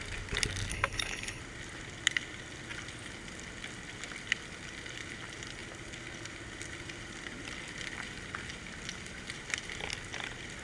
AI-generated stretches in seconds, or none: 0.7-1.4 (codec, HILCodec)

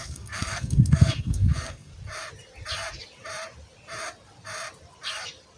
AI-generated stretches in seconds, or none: 0.0-1.9 (codec, SNAC)

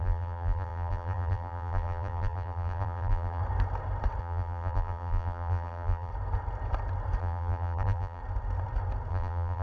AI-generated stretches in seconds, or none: 0.0-3.4 (vocoder, BigVGAN v2); 4.2-6.1; 7.2-8.2; 9.1-9.6

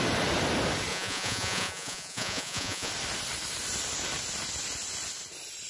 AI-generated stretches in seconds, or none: 0.9-2.9 (vocoder, Vocos)

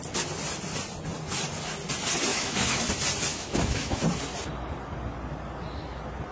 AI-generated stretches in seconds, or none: 2.3-2.8 (autoencoder, DAC-VAE); 3.3-4.0

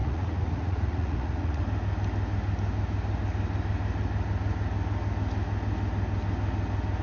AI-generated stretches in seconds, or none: 0.0-1.6 (vocoder, Vocos)

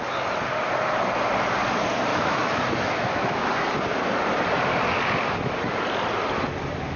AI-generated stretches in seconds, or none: 2.1-3.5 (autoencoder, DAC-VAE)

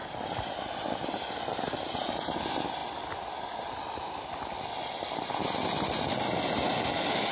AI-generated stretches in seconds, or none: none